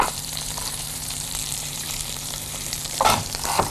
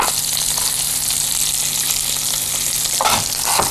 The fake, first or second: first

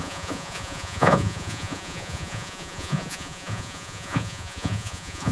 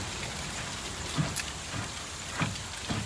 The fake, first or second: first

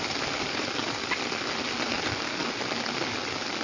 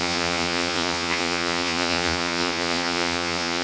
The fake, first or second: second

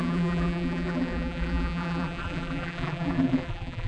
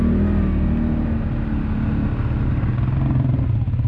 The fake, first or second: first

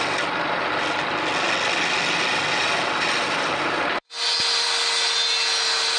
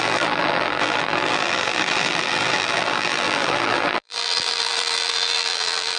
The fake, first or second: second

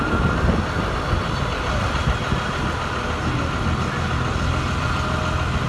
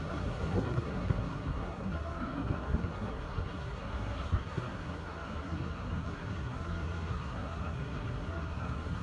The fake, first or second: second